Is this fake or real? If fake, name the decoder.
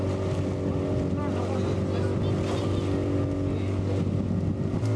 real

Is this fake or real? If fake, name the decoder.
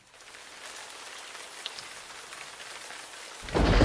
real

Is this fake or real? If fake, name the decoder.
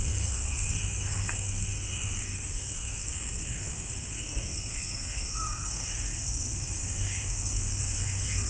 fake, codec, SNAC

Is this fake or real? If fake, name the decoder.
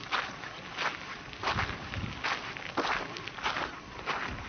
real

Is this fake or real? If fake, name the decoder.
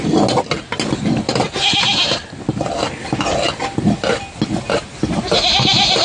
real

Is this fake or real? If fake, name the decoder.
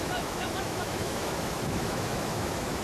fake, autoencoder, DAC-VAE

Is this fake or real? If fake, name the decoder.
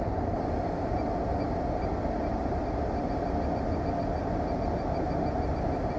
real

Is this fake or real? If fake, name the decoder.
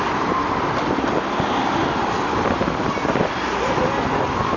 real